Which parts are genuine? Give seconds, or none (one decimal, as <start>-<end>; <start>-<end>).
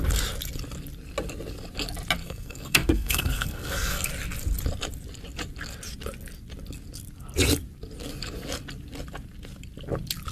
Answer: 0.0-2.2; 4.1-10.3